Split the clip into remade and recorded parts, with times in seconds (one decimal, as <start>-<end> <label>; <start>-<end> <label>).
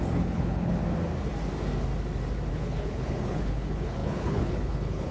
0.0-0.8 remade; 0.8-2.5 recorded; 2.5-5.1 remade